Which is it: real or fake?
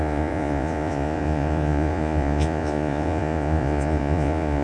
fake